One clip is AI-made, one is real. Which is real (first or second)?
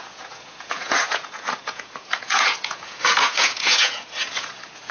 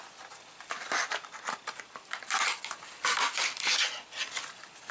second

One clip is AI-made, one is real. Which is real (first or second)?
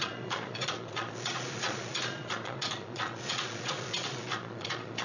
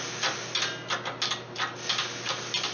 second